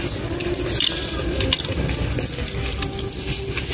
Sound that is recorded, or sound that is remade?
recorded